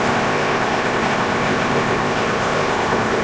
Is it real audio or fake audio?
fake